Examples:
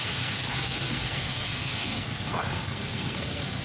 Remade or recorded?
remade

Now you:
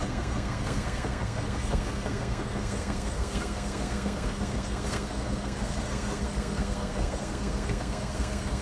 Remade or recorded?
remade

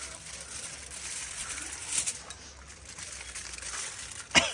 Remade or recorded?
recorded